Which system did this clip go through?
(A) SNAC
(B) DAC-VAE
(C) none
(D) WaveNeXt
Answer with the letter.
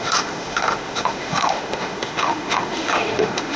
B